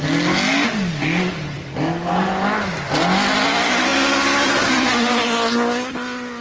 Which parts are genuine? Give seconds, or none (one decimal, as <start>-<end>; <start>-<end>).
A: 0.0-6.4